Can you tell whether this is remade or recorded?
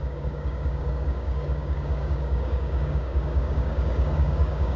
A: remade